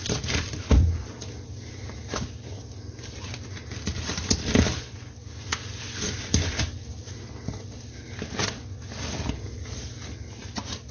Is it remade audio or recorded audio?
recorded